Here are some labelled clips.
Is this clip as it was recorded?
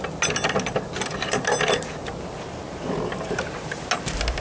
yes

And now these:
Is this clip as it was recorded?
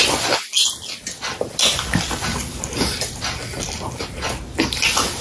yes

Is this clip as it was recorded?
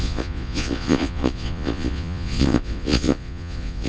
no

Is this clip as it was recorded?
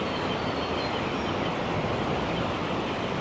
yes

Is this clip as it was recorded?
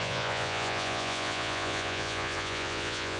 no